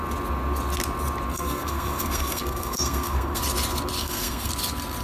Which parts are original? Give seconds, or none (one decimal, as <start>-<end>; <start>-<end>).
0.0-1.3; 3.4-4.0; 4.5-5.0